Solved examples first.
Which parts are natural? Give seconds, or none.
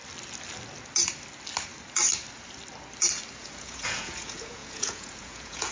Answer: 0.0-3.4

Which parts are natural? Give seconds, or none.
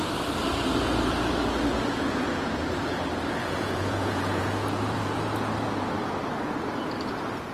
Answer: 0.0-1.7; 2.5-3.4; 5.2-7.5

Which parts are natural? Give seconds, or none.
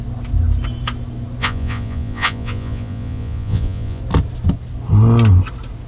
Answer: 0.0-1.4; 4.0-5.9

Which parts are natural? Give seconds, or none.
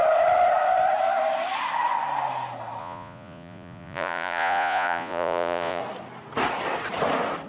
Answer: 0.0-2.8; 5.8-7.5